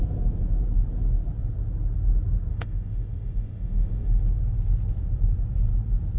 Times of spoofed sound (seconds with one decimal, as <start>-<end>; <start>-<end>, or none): 2.5-4.2